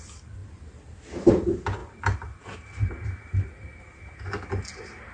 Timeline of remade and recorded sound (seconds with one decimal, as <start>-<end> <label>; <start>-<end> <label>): 0.0-5.1 recorded